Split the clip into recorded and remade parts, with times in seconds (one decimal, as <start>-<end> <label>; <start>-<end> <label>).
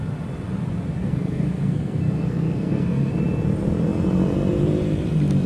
0.0-1.0 recorded; 1.0-3.2 remade; 3.2-5.5 recorded